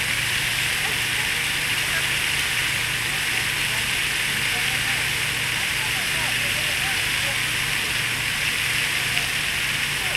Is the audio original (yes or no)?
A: yes